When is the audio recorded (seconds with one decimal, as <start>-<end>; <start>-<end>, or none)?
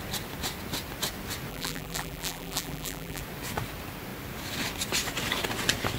0.0-1.5; 3.2-6.0